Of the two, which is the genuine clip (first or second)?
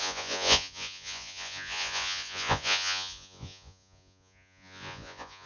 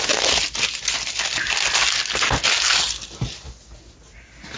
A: second